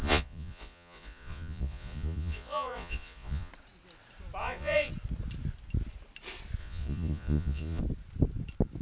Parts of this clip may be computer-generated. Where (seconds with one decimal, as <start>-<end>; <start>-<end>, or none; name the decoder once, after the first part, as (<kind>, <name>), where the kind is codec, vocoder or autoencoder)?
0.0-3.5 (vocoder, Vocos); 4.4-4.9; 6.6-7.8